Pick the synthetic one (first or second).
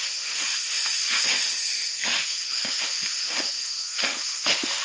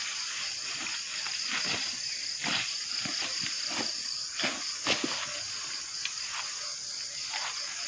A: first